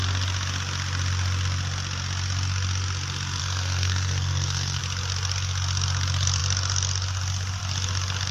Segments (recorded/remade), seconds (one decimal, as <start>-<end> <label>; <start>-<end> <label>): 0.0-3.4 recorded; 3.4-4.8 remade; 4.8-8.3 recorded